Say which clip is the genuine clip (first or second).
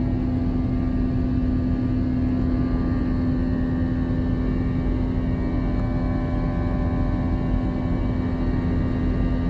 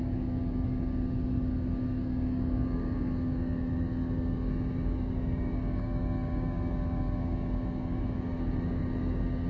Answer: first